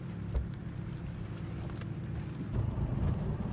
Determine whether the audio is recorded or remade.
recorded